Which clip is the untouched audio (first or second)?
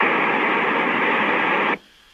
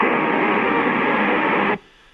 first